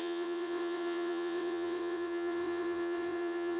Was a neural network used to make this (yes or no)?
yes